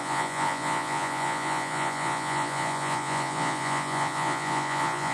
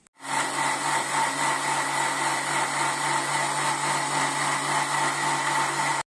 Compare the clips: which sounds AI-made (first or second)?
first